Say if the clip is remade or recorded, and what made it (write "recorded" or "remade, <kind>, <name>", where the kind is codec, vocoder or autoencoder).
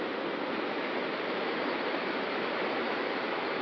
remade, vocoder, BigVGAN v2